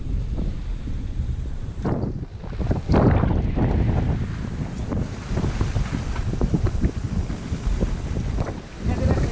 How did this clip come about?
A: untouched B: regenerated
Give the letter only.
A